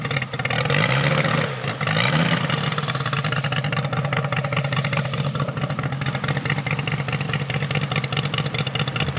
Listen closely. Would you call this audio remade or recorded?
recorded